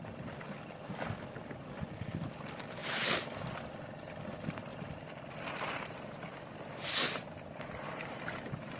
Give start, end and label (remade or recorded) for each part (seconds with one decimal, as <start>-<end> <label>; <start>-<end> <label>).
0.0-8.8 recorded